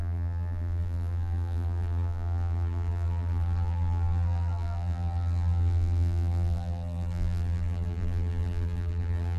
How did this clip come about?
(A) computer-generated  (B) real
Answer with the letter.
A